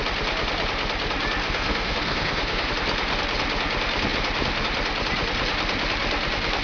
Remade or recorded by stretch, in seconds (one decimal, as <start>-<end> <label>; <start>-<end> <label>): 0.0-1.4 recorded; 1.4-2.7 remade; 2.7-6.6 recorded